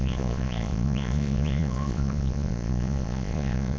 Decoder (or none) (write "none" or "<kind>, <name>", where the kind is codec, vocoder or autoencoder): vocoder, Vocos